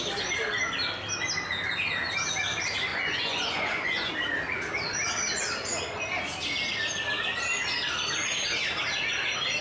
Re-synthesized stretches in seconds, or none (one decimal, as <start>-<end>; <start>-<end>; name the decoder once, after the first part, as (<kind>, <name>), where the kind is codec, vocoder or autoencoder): 2.9-4.1 (vocoder, Vocos)